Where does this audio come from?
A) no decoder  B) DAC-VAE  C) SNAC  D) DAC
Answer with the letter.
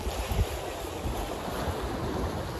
A